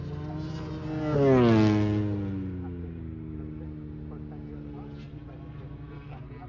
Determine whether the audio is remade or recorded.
recorded